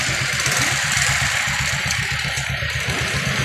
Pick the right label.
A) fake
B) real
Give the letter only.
A